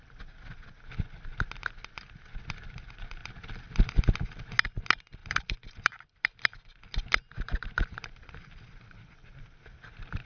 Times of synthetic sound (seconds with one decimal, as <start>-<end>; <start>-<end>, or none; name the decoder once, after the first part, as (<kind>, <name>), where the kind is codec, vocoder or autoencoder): 3.2-4.0 (vocoder, BigVGAN v2); 5.2-8.8